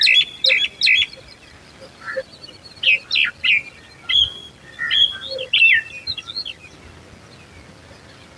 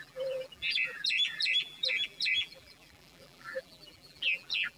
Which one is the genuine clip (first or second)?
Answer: first